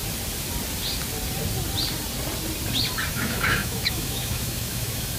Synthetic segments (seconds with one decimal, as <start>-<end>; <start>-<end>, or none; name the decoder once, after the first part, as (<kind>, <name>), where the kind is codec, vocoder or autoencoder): 3.1-5.2 (autoencoder, DAC-VAE)